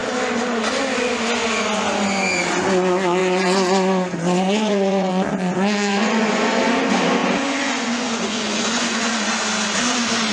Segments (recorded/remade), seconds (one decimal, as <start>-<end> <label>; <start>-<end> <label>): 0.0-3.2 recorded; 3.2-5.1 remade; 5.1-5.9 recorded; 5.9-6.6 remade; 6.6-7.2 recorded; 7.2-9.3 remade; 9.3-10.3 recorded